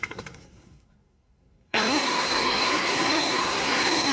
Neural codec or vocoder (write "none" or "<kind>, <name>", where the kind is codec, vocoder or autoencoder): codec, SNAC